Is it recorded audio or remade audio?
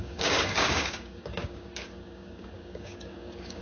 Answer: remade